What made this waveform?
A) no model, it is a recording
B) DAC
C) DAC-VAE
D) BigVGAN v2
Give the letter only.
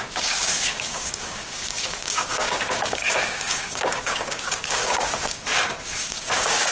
B